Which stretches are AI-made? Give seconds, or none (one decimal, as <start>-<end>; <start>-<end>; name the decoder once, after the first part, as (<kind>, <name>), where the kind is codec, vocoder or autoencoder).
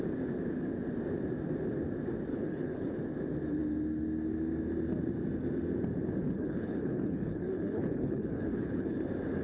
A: 2.3-3.0 (codec, HILCodec); 6.2-9.0